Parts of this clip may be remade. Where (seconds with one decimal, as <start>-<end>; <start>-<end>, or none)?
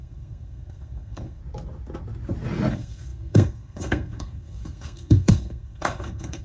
0.0-1.4; 2.7-6.4